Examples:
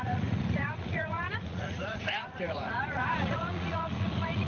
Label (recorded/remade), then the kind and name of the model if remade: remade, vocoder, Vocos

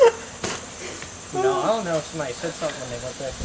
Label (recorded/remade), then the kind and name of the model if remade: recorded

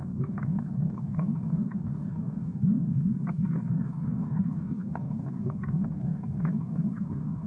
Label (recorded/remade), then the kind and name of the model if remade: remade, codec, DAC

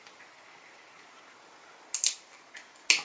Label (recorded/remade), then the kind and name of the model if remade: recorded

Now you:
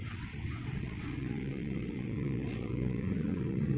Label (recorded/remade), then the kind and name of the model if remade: remade, vocoder, WaveNeXt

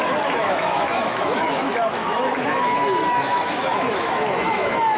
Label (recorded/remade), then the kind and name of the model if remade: remade, autoencoder, DAC-VAE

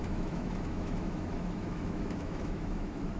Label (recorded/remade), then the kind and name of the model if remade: remade, autoencoder, DAC-VAE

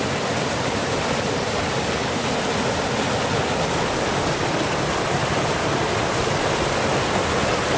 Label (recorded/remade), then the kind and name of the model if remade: recorded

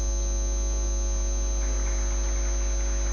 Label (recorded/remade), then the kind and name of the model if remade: recorded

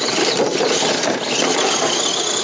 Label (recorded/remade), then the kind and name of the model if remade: recorded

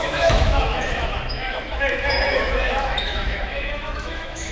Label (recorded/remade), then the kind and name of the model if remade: remade, autoencoder, DAC-VAE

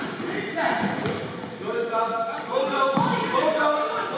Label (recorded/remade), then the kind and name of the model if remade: recorded